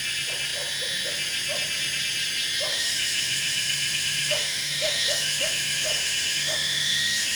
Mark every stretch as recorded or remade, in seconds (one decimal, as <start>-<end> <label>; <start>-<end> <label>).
0.0-2.7 recorded; 2.7-7.4 remade